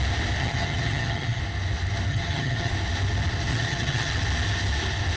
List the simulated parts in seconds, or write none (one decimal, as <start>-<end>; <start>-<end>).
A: 0.4-1.4; 2.1-2.7; 3.5-4.2